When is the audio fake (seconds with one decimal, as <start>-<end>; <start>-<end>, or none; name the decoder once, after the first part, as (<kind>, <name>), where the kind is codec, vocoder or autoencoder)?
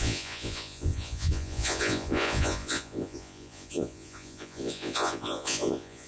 0.0-6.1 (vocoder, Vocos)